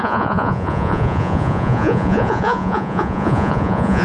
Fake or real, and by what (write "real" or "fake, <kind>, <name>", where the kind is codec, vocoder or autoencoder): fake, vocoder, Vocos